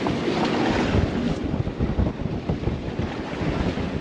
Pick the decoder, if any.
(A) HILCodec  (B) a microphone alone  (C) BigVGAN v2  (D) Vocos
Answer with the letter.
B